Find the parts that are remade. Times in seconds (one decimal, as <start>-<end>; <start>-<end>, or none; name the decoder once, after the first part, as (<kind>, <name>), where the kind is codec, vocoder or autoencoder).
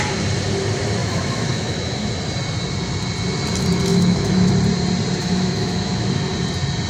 1.0-2.1 (autoencoder, DAC-VAE); 3.9-4.5; 5.2-6.2